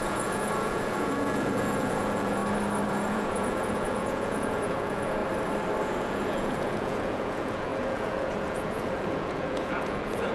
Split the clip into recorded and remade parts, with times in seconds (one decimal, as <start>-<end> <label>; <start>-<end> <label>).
0.0-2.4 remade; 2.4-2.9 recorded; 2.9-5.2 remade; 5.2-5.8 recorded; 5.8-10.3 remade